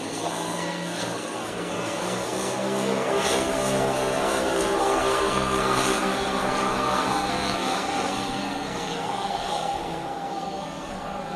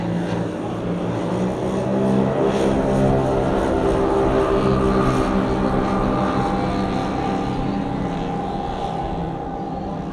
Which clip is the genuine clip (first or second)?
second